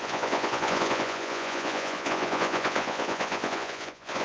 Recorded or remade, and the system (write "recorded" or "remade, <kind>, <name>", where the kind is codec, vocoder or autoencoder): remade, vocoder, Vocos